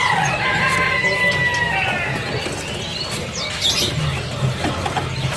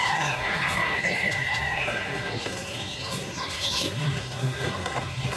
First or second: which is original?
first